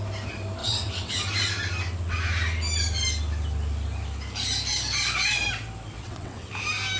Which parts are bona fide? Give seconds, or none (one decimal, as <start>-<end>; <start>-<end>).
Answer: 0.0-0.6; 1.1-6.0; 6.5-7.0